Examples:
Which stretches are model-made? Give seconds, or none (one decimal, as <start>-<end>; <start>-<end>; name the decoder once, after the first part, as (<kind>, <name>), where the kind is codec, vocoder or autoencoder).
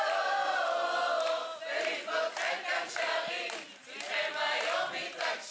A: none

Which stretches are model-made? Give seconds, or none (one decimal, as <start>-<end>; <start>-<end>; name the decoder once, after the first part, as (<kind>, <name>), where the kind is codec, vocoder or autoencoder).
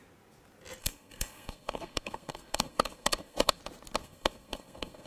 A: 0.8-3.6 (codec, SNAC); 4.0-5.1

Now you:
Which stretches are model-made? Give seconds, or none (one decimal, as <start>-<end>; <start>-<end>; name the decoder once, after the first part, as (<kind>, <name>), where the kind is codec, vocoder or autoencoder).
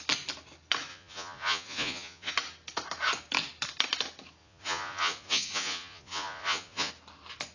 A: 0.9-2.3 (vocoder, Vocos); 4.4-6.9